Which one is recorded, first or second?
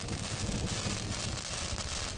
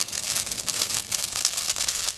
first